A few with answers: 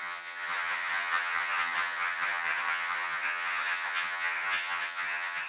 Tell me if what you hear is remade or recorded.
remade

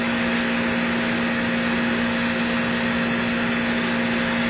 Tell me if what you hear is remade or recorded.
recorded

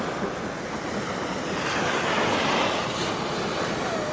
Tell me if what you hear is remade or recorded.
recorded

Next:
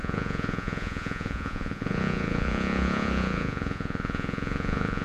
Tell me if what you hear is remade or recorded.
remade